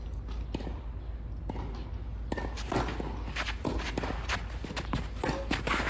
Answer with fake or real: real